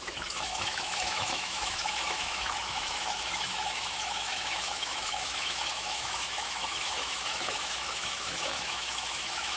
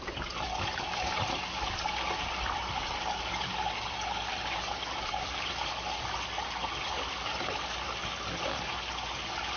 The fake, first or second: first